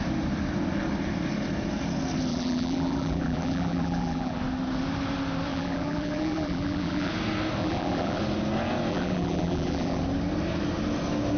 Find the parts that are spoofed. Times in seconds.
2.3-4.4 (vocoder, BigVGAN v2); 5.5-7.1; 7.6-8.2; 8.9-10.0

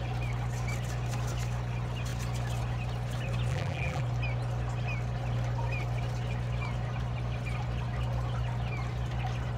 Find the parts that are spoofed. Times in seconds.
3.5-4.0 (vocoder, BigVGAN v2)

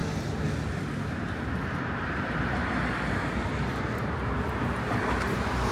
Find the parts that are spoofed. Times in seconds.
1.1-2.6 (vocoder, BigVGAN v2); 3.8-5.7

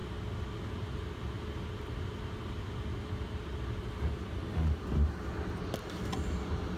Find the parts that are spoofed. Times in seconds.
none

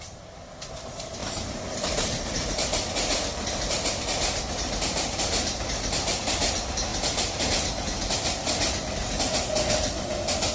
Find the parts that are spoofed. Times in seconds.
1.2-6.2 (vocoder, BigVGAN v2); 6.9-7.5

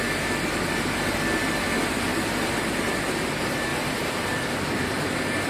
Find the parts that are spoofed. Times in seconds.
2.1-2.7 (vocoder, BigVGAN v2); 3.7-4.6

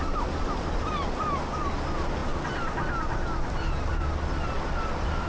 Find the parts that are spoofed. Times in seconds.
none